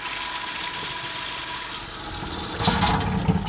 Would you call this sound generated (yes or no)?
no